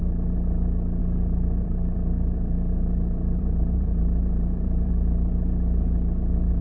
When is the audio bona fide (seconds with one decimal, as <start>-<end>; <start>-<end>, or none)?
0.0-1.0; 4.9-6.6